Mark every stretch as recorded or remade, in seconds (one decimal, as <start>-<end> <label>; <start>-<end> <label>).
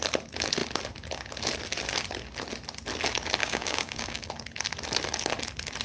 0.0-3.4 recorded; 3.4-4.3 remade; 4.3-5.8 recorded